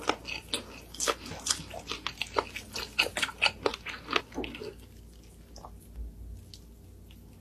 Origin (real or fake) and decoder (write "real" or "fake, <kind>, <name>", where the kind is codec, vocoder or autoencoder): real